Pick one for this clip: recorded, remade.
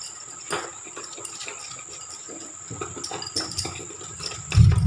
recorded